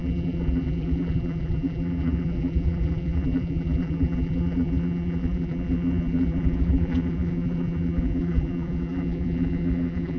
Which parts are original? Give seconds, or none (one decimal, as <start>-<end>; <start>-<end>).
none